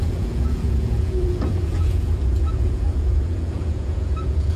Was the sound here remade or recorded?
remade